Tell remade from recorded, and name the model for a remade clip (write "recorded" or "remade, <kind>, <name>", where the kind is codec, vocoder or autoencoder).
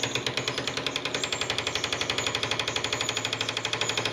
recorded